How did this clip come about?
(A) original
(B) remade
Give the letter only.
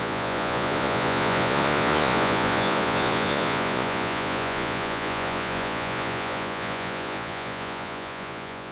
B